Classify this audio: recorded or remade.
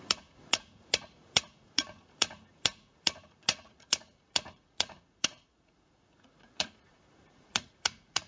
remade